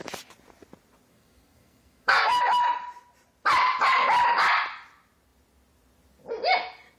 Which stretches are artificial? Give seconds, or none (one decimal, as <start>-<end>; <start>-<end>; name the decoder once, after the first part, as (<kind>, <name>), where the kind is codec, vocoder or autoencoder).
1.1-2.4 (codec, SNAC)